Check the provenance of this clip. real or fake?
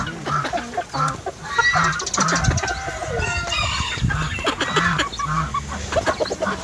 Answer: real